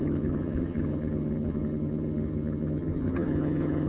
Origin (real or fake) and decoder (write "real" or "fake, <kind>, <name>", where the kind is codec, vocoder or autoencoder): fake, vocoder, HiFi-GAN